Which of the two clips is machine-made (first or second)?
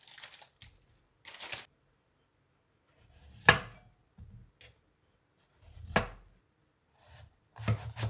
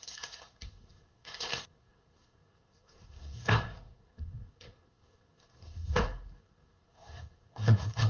second